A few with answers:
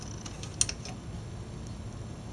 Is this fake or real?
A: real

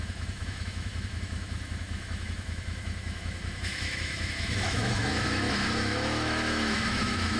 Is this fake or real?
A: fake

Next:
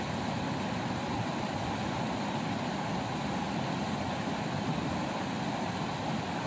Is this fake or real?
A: real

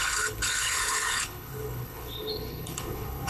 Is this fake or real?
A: fake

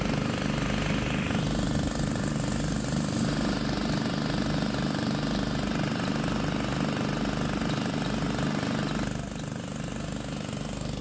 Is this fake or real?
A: real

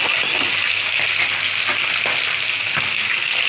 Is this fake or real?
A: real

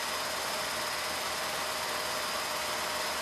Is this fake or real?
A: real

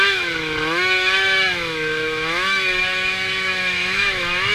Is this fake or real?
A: fake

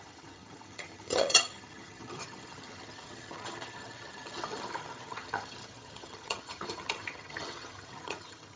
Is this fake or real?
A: fake